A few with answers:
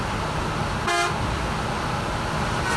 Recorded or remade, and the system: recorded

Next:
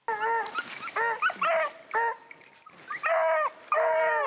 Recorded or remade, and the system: recorded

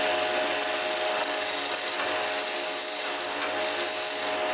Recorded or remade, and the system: recorded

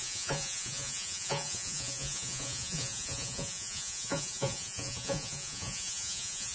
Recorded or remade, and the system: remade, vocoder, Vocos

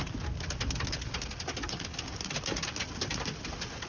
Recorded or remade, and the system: recorded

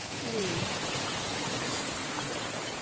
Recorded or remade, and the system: remade, vocoder, Vocos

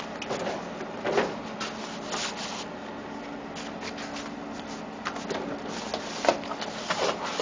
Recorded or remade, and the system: recorded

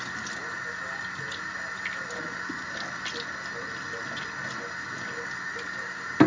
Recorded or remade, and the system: recorded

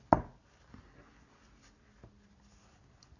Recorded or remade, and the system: recorded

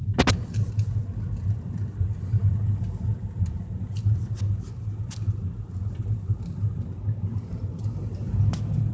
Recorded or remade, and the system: recorded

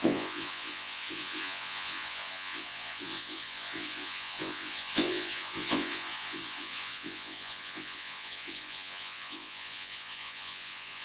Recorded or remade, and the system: remade, vocoder, Vocos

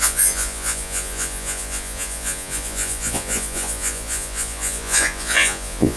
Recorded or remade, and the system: remade, vocoder, Vocos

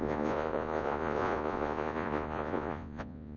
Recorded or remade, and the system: remade, vocoder, Vocos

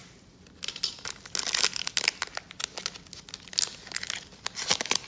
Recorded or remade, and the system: recorded